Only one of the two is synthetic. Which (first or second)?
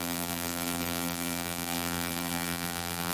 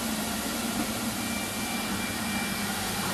first